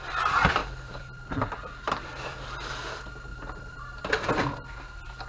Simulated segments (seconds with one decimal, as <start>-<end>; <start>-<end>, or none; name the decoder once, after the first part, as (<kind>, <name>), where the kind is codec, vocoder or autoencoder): 0.6-2.8 (vocoder, BigVGAN v2); 3.3-4.1